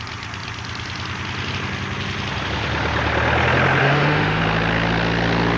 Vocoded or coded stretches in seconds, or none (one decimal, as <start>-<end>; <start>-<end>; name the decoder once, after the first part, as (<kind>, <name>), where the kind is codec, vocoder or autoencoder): 3.8-4.4 (autoencoder, DAC-VAE)